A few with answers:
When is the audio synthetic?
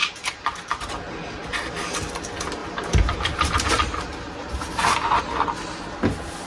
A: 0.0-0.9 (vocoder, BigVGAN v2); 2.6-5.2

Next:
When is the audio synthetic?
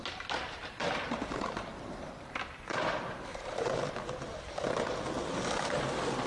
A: 0.6-2.9 (vocoder, BigVGAN v2); 3.3-3.9